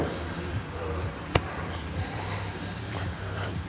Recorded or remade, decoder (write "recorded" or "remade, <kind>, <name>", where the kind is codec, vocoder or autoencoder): remade, vocoder, BigVGAN v2